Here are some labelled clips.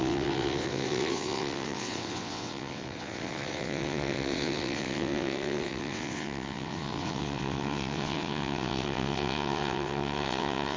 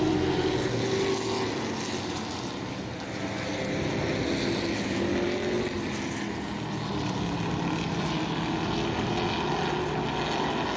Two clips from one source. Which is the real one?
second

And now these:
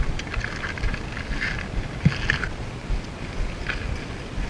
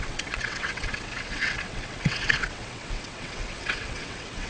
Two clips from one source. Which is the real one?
first